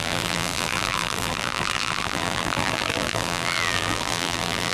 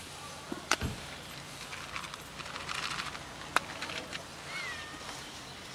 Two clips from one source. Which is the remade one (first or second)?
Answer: first